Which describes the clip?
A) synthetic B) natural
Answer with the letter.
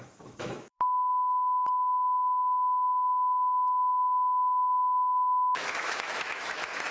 A